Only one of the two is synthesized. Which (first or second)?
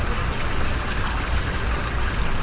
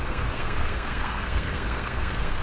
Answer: second